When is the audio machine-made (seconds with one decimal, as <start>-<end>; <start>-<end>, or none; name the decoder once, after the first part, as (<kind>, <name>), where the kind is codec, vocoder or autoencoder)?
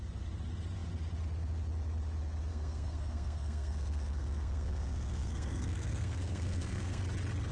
2.5-7.0 (codec, SNAC)